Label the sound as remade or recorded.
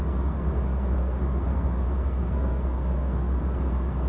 remade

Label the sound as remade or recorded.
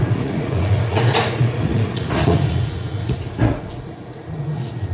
remade